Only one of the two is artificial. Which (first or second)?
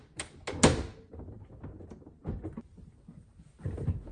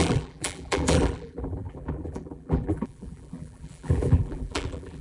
second